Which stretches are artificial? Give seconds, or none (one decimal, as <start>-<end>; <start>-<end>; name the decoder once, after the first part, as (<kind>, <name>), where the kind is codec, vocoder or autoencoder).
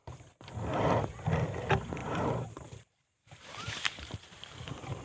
2.0-5.0 (vocoder, BigVGAN v2)